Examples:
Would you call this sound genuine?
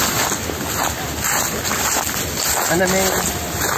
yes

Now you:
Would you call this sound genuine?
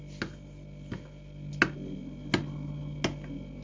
yes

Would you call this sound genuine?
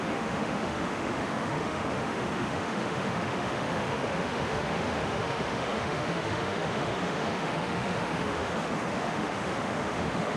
no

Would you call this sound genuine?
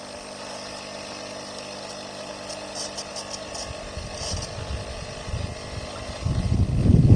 yes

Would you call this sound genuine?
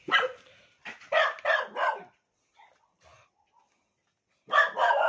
yes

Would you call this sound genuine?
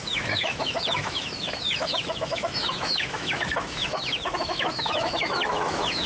no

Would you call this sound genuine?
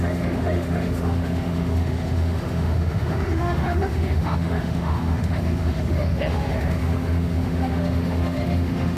no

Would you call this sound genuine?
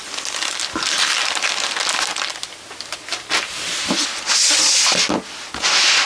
yes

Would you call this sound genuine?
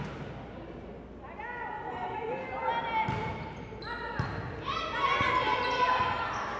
yes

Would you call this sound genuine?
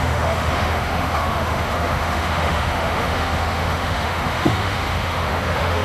no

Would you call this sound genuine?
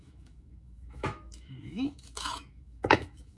no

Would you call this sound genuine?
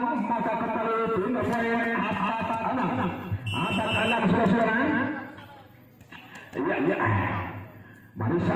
yes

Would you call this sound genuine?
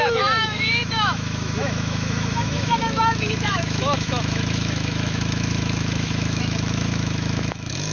no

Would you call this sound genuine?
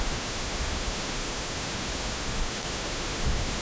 no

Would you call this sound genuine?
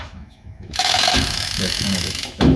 no